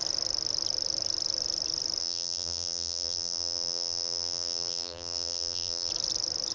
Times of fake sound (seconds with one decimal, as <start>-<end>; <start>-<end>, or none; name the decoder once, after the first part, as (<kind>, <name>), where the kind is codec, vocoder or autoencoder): 2.0-5.9 (vocoder, BigVGAN v2)